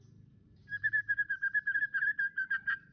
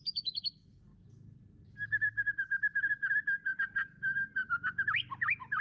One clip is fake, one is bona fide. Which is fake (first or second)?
first